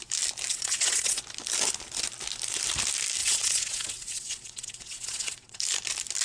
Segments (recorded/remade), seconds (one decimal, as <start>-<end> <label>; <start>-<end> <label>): 0.0-0.5 recorded; 0.5-1.2 remade; 1.2-3.2 recorded; 3.2-5.6 remade; 5.6-6.2 recorded